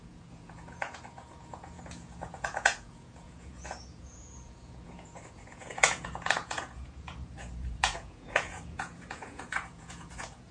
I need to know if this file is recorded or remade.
remade